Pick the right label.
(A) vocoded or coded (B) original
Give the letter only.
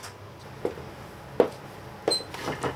B